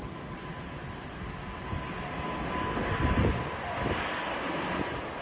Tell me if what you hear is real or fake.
real